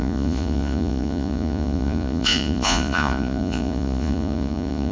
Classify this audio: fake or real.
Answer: fake